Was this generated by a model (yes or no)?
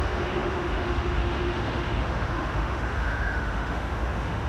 yes